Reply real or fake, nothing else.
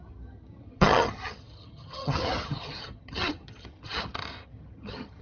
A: fake